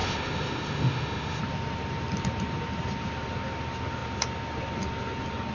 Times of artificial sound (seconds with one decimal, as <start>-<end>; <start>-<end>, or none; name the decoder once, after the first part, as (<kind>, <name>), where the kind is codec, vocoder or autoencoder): 0.0-1.4 (autoencoder, DAC-VAE)